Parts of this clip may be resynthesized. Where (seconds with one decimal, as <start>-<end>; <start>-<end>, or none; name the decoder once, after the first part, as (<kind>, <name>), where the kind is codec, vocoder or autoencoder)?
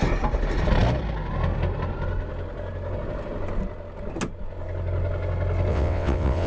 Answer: 5.7-6.5 (vocoder, WaveNeXt)